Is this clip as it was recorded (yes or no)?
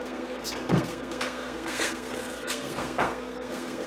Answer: no